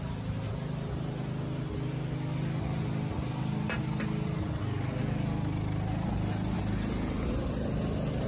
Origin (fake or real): real